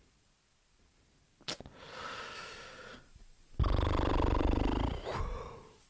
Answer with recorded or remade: recorded